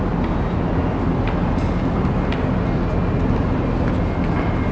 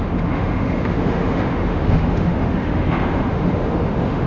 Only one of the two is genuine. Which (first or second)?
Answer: first